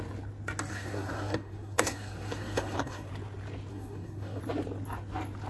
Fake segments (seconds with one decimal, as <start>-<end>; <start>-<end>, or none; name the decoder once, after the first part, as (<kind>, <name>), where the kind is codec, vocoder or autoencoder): 0.7-3.1 (codec, SNAC); 3.7-4.4